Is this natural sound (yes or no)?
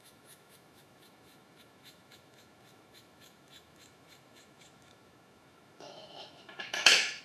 no